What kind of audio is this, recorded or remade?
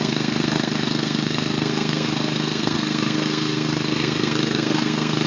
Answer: remade